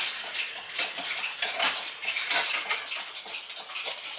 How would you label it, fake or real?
real